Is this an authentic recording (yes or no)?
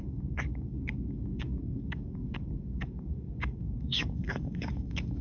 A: no